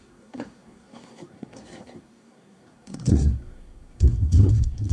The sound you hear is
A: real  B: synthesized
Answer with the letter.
B